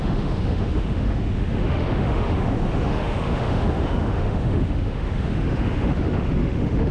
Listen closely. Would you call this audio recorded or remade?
remade